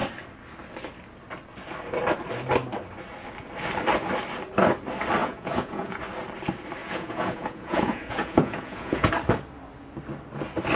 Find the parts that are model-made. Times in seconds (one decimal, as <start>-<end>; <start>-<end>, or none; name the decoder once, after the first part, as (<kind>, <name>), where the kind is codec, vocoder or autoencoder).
5.2-6.0 (vocoder, Vocos); 6.8-9.1